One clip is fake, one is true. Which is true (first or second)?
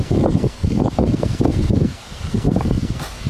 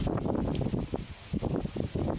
second